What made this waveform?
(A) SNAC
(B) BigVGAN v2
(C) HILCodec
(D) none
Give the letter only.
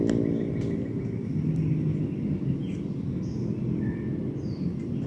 D